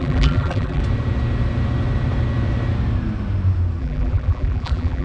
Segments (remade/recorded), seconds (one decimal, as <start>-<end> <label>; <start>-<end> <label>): 0.0-0.8 remade; 0.8-3.8 recorded; 3.8-5.0 remade